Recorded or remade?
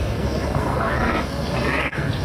remade